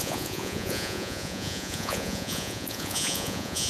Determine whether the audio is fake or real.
fake